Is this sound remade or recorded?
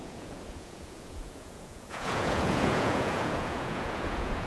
remade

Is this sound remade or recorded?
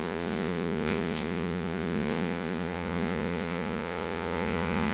remade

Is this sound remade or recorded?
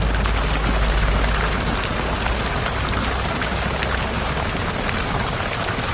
recorded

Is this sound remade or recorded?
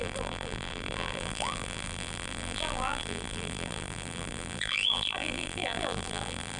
remade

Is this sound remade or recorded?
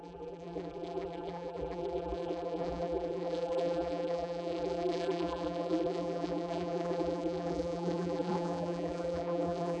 remade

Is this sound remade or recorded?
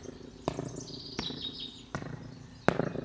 recorded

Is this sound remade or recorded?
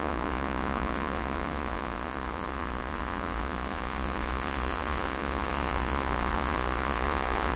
remade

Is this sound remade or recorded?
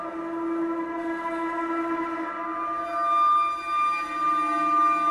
recorded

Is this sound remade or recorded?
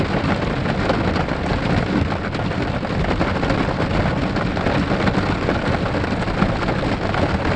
recorded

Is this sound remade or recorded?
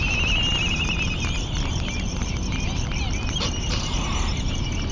remade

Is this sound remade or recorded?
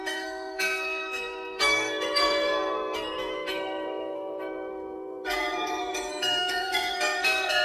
remade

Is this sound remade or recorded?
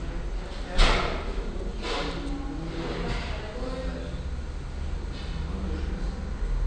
recorded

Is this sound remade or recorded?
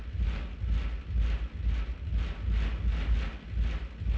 recorded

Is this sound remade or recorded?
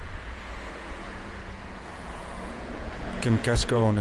remade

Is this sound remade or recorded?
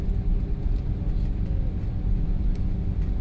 recorded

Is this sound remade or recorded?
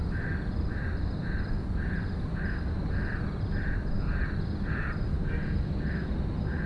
recorded